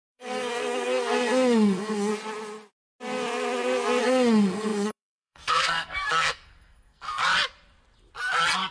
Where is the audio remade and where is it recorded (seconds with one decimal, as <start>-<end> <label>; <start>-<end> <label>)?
0.0-2.1 remade; 2.1-4.0 recorded; 4.0-7.2 remade; 7.2-8.7 recorded